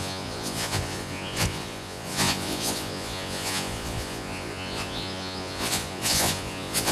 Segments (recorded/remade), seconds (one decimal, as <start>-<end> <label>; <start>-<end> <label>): 0.0-6.9 remade